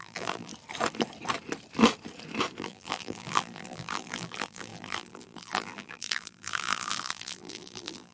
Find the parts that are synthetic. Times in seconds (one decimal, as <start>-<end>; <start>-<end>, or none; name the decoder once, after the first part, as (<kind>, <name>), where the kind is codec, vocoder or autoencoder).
0.0-0.5 (vocoder, BigVGAN v2); 2.6-8.1